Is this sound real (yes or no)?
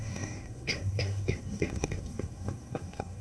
no